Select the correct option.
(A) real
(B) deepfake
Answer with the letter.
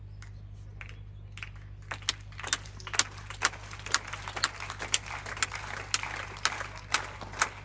A